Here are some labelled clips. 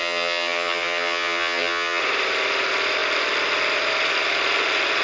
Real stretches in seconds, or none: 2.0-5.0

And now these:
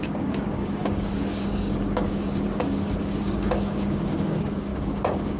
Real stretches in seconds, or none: none

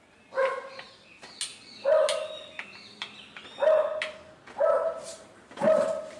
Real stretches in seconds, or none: 0.0-6.2

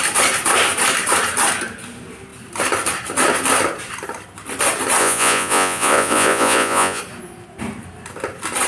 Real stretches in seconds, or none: 0.0-5.0; 7.0-8.7

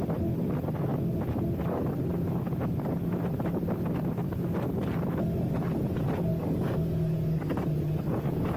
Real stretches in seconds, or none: 0.0-6.3

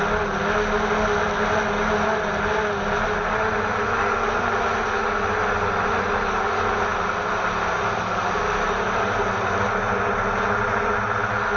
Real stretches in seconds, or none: 0.0-11.6